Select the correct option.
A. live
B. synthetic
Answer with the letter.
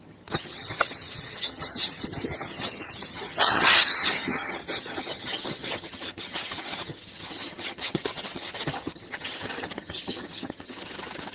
B